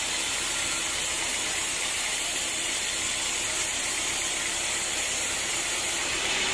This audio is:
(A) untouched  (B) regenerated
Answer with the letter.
A